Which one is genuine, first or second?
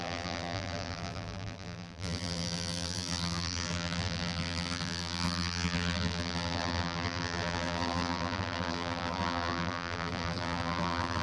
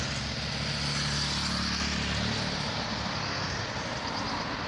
second